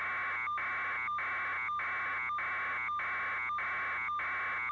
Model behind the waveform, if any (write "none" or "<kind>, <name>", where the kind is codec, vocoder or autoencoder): none